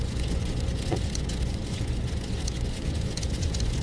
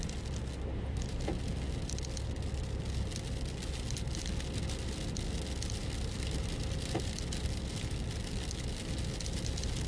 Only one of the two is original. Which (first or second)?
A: second